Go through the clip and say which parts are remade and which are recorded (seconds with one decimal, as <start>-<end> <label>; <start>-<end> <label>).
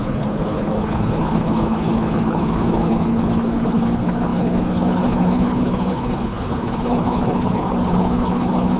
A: 0.0-8.8 remade